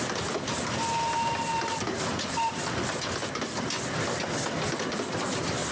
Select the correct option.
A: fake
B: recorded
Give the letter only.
B